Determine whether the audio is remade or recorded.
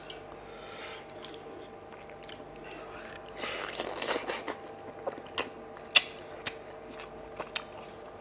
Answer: recorded